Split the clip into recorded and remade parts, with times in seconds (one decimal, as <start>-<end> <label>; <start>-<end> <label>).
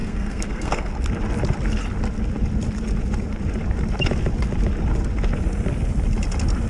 0.0-0.9 remade; 0.9-6.7 recorded